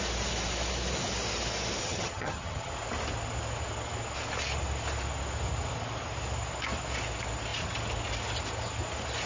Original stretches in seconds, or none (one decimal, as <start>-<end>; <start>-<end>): 0.0-1.8; 2.7-9.3